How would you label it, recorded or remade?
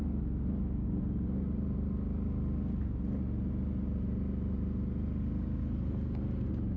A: recorded